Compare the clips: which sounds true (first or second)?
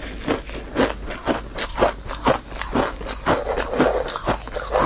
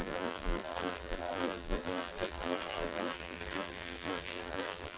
first